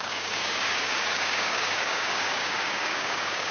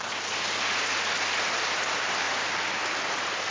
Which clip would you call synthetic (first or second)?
first